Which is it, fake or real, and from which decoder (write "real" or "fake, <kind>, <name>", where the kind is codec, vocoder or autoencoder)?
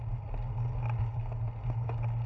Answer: real